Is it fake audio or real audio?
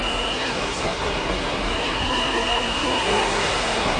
fake